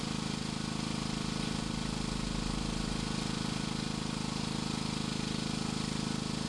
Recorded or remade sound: recorded